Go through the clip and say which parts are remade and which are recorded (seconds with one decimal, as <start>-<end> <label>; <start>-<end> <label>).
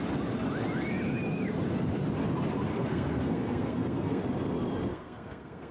0.0-2.7 recorded; 2.7-4.2 remade; 4.2-4.9 recorded; 4.9-5.7 remade